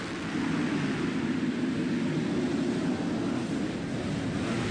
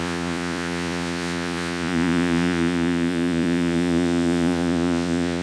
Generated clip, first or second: second